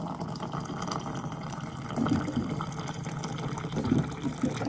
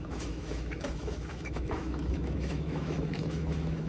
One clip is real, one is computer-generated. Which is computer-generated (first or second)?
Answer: second